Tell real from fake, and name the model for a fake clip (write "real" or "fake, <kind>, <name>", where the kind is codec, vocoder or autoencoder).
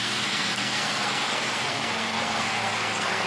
fake, codec, SNAC